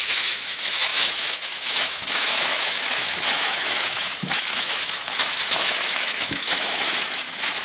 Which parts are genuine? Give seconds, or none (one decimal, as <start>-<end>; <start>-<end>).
none